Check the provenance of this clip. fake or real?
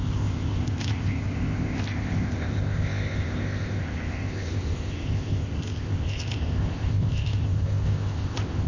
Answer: fake